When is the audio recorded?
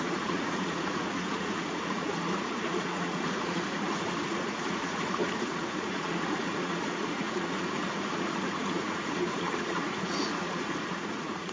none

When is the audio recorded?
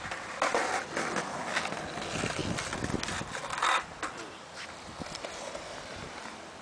0.0-6.6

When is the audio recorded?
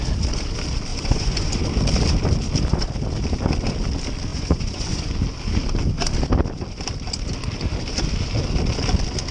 0.0-0.9; 1.6-4.3; 5.1-9.3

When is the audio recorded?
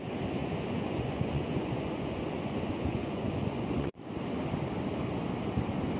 0.0-0.4; 4.0-6.0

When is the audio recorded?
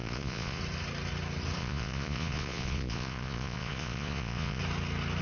0.6-1.6; 4.6-5.2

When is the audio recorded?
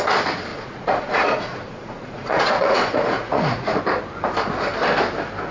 0.0-0.5; 3.8-5.5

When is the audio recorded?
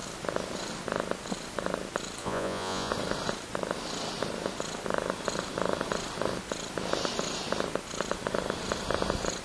0.0-2.2; 2.9-9.4